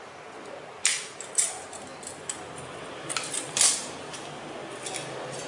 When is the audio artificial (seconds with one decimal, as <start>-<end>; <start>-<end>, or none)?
none